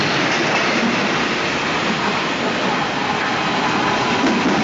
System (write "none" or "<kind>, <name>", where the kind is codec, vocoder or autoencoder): none